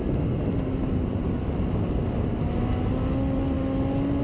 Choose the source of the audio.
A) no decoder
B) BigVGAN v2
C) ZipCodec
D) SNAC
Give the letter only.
A